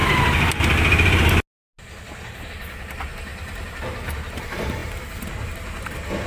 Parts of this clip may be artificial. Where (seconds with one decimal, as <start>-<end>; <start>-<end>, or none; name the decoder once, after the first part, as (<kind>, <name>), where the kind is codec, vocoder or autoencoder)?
2.5-6.3 (vocoder, BigVGAN v2)